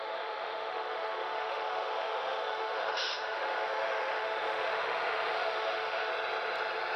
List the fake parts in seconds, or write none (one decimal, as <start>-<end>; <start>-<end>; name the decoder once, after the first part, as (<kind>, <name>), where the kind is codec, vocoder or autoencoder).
0.0-6.1 (autoencoder, DAC-VAE)